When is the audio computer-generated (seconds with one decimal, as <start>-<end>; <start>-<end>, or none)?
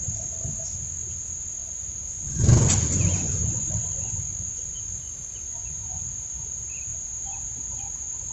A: 1.6-6.5